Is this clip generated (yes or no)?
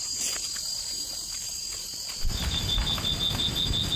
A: no